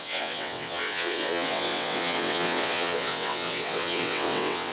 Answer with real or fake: fake